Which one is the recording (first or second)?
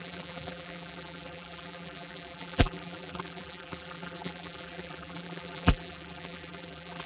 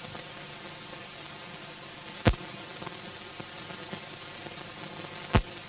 second